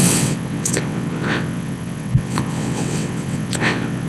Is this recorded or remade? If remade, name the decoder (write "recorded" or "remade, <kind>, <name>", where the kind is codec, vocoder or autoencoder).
remade, vocoder, WaveNeXt